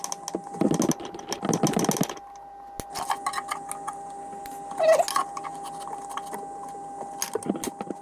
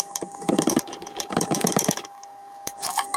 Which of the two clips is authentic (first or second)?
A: first